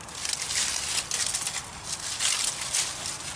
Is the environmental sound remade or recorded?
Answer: recorded